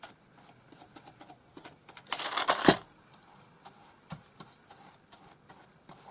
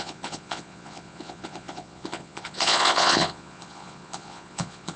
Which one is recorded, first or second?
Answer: first